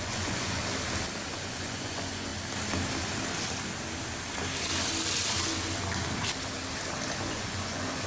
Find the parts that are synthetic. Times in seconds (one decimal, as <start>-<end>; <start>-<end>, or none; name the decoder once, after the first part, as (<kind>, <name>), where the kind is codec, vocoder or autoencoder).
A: 0.0-0.6 (vocoder, Vocos); 1.3-2.3; 7.2-8.1